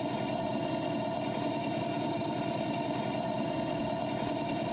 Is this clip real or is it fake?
real